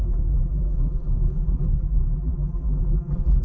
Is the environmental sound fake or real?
fake